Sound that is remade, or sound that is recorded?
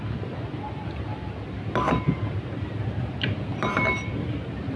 recorded